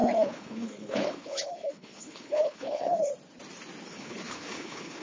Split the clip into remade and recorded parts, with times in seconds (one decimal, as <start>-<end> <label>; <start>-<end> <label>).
0.0-3.1 remade; 3.1-3.9 recorded; 3.9-5.0 remade